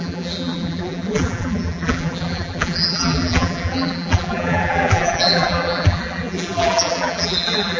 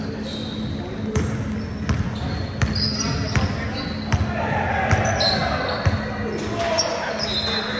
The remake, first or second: first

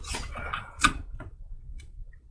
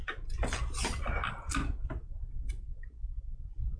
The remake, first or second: first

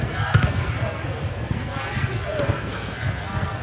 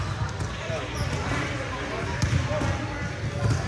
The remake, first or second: first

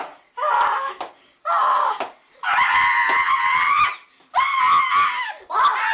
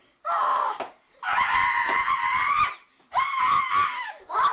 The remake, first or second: second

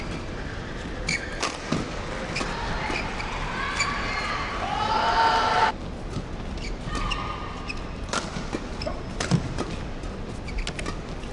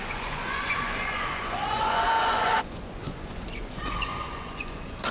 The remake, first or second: second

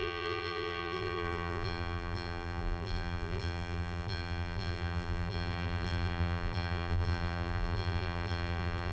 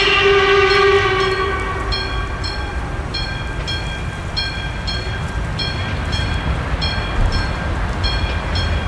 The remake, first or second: first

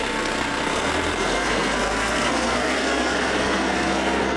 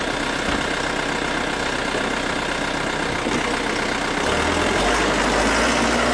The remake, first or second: first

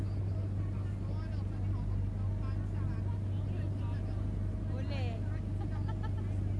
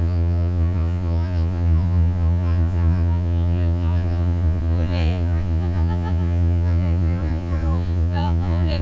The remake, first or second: second